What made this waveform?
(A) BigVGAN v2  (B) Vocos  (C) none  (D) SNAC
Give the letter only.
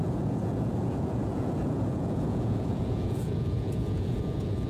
B